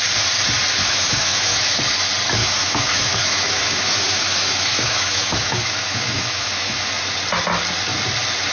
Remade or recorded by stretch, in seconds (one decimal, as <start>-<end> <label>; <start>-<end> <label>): 0.0-0.8 recorded; 0.8-1.8 remade; 1.8-2.4 recorded; 2.4-6.9 remade; 6.9-8.5 recorded